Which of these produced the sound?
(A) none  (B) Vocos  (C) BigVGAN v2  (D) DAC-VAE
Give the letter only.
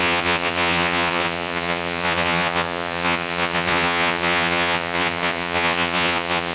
B